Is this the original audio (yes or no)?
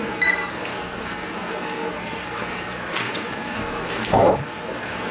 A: no